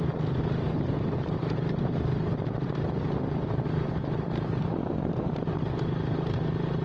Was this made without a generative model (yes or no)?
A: no